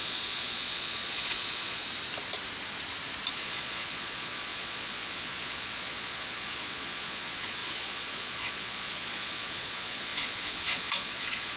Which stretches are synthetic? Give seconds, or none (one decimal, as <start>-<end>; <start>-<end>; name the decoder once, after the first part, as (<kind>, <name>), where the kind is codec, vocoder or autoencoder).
0.0-1.8 (vocoder, Vocos); 3.3-11.6